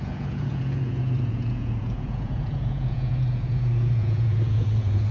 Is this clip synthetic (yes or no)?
yes